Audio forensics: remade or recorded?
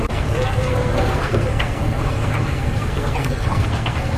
remade